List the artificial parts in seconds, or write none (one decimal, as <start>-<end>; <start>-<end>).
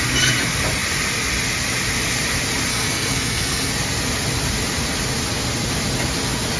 2.7-3.7